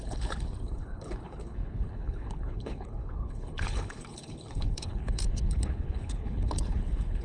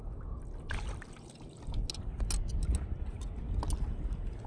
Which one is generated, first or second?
first